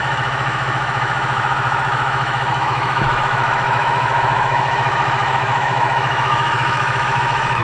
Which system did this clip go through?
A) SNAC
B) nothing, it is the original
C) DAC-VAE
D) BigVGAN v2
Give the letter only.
C